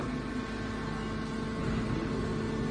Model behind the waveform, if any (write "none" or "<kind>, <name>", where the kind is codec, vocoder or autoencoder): none